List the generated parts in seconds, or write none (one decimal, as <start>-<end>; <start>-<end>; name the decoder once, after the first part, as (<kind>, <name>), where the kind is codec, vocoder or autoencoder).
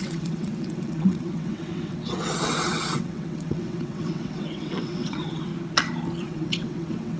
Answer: 0.0-5.5 (vocoder, WaveNeXt); 6.2-7.2